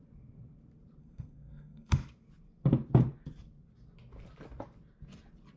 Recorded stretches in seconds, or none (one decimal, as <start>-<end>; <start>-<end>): 0.0-1.0; 1.9-5.6